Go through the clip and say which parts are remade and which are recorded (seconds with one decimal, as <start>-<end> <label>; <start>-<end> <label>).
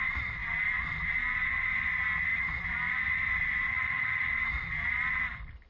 0.0-3.7 recorded; 3.7-4.3 remade; 4.3-5.7 recorded